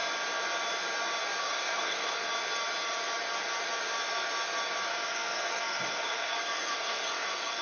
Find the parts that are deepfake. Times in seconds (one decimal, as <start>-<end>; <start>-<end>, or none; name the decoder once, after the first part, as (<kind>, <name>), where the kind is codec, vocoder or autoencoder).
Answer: 1.4-2.3 (codec, SNAC); 4.9-7.6

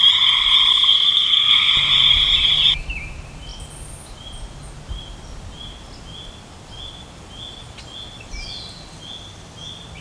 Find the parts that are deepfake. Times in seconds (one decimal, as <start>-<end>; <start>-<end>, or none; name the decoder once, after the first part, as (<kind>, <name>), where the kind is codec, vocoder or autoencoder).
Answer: 0.7-1.7 (codec, SNAC)

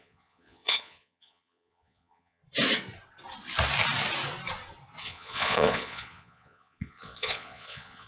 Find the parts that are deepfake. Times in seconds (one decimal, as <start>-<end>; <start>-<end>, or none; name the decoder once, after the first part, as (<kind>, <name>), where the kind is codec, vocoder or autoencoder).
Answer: 0.0-2.4 (vocoder, Vocos); 5.0-8.1

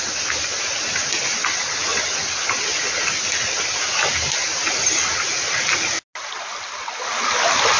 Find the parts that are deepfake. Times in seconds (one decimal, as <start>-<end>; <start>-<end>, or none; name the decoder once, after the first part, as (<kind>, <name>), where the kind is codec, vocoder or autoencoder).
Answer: none

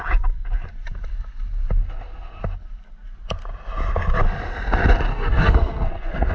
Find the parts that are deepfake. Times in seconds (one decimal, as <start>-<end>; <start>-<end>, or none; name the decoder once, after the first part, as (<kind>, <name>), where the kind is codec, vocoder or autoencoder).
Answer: 1.8-2.4 (codec, SNAC); 5.1-6.3

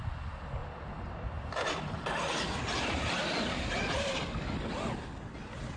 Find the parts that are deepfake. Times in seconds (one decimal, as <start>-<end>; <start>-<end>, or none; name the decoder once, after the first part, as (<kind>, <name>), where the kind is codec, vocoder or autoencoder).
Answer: 0.6-4.1 (vocoder, BigVGAN v2)

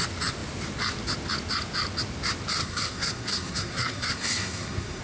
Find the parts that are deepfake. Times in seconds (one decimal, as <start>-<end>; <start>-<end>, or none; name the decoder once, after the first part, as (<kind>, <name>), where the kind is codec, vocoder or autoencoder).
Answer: 2.6-5.0 (codec, SNAC)